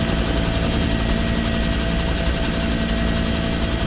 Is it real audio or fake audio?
real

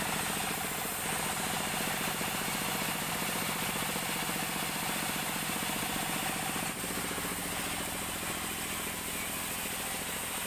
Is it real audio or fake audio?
real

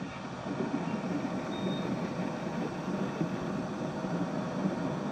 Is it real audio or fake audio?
real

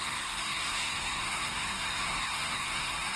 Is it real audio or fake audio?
fake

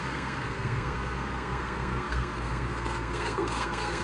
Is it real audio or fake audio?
fake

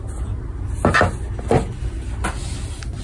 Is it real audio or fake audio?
real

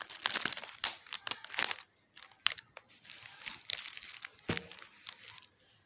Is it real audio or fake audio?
real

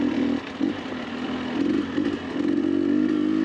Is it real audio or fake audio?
real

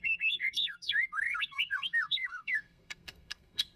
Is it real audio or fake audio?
fake